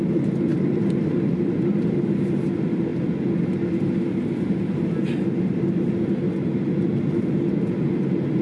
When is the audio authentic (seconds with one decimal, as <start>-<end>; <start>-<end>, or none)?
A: 0.0-0.5; 1.9-8.4